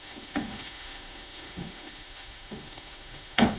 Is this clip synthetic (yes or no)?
yes